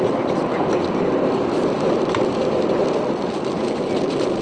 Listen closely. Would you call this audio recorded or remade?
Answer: recorded